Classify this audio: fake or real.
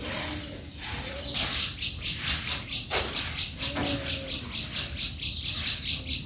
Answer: real